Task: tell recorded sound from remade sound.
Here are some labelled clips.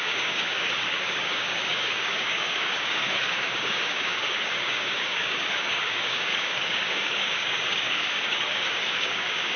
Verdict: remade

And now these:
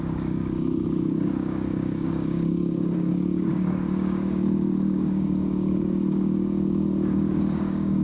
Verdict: remade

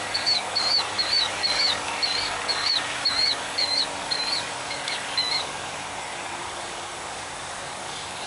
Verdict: remade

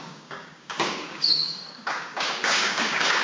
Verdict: remade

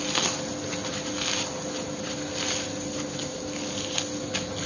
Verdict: recorded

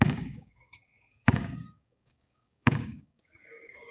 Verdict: remade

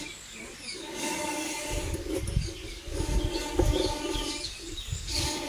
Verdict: remade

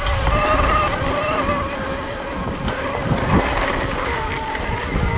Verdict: recorded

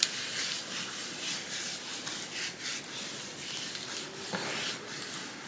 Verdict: recorded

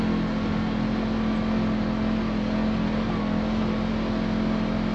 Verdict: recorded